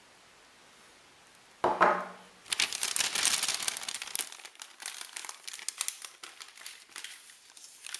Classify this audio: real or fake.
real